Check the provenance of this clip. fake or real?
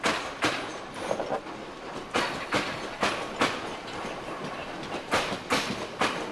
real